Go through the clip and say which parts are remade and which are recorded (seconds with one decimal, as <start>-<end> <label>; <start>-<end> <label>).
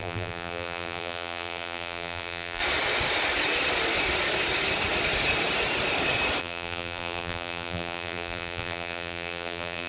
0.0-2.6 remade; 2.6-6.4 recorded; 6.4-9.9 remade